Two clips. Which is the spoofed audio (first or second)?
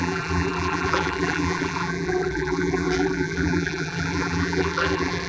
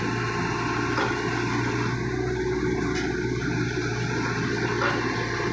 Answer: first